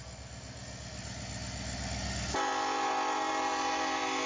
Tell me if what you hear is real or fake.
real